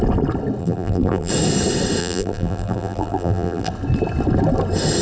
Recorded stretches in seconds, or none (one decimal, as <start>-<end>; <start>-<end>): 0.0-0.6; 1.3-2.0; 3.7-5.0